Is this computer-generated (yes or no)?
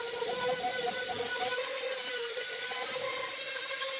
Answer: no